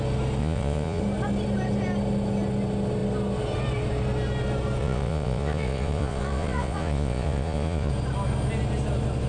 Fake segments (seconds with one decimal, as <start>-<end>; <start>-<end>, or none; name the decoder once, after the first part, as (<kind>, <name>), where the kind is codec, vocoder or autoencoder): 0.4-1.0 (vocoder, Vocos); 4.8-7.9